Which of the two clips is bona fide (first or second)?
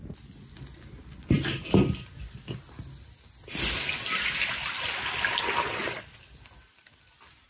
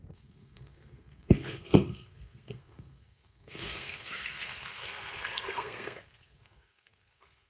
first